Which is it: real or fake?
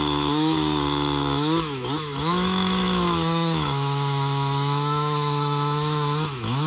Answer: fake